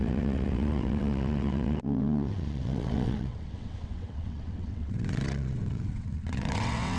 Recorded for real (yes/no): no